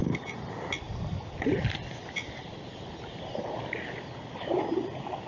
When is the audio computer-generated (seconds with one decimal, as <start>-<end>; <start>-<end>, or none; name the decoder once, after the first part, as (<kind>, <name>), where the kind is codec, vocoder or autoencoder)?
none